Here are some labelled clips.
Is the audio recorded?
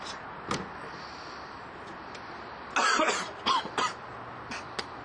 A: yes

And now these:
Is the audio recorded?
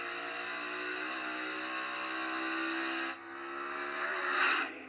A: yes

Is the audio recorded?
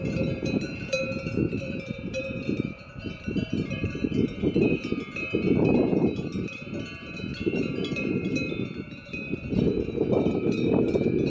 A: no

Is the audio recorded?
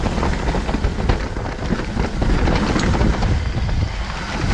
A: yes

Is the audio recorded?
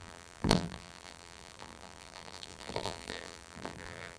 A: no